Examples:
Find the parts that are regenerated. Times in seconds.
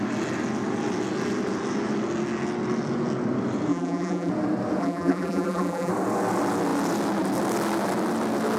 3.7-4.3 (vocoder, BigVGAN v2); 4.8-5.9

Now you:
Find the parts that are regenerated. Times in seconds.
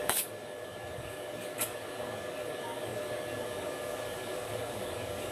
0.0-5.3 (codec, DAC)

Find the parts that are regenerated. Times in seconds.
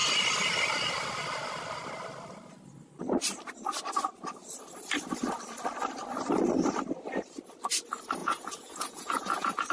8.2-9.7 (vocoder, Vocos)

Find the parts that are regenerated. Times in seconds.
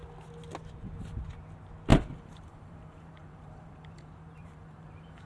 1.9-5.3 (vocoder, BigVGAN v2)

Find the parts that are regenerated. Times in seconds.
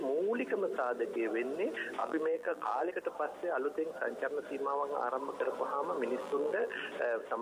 2.0-2.9 (vocoder, BigVGAN v2); 6.2-6.8